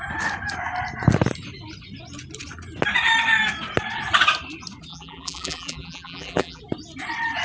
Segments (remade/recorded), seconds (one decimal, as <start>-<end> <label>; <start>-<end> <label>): 0.0-4.9 recorded; 4.9-6.6 remade; 6.6-7.4 recorded